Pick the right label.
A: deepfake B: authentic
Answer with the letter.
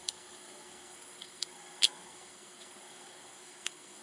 A